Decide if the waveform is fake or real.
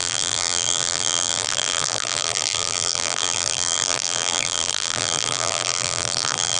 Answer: fake